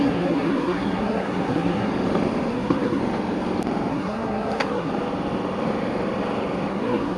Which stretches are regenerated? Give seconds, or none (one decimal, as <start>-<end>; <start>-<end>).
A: 0.0-1.9; 2.5-3.0; 3.9-4.9; 6.7-7.2

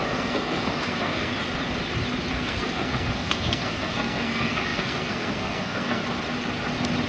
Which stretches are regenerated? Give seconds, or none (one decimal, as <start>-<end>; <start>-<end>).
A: 0.0-1.3; 2.3-6.0

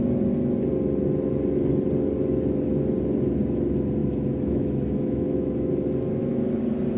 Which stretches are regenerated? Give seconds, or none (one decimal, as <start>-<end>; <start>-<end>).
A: 4.0-6.6